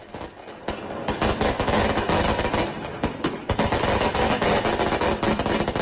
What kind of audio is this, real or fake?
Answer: real